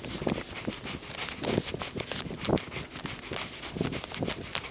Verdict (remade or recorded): recorded